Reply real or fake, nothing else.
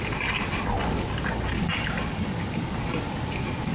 real